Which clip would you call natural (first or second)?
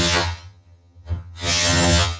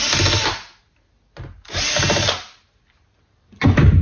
second